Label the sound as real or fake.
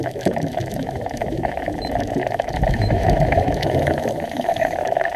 fake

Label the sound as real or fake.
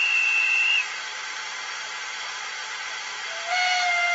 real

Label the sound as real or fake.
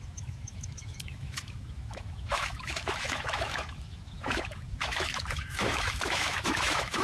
fake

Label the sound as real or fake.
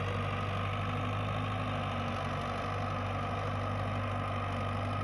real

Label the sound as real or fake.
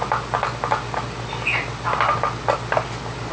real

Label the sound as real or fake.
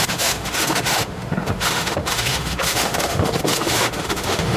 fake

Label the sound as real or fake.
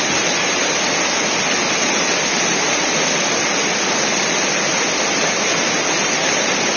real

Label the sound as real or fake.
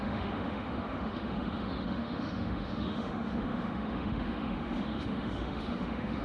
fake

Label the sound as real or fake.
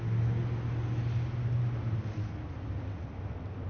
real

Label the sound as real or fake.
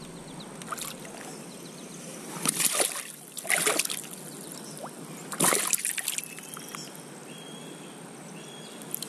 real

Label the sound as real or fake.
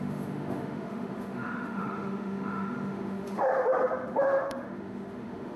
fake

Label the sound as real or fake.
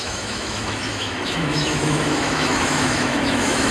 fake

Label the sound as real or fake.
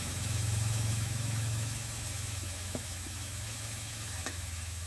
fake